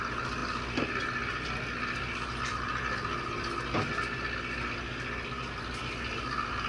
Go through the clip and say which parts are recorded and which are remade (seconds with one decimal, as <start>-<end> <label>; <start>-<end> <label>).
0.0-6.7 recorded